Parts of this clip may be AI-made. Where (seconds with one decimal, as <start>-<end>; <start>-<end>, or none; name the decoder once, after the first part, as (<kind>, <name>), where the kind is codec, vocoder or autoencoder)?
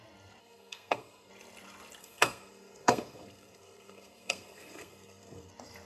0.4-1.3 (codec, SNAC); 2.0-5.5